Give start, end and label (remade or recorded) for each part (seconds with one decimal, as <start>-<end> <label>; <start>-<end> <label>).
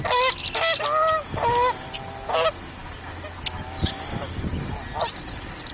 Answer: 0.0-5.7 recorded